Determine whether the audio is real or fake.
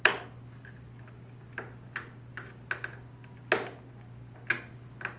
real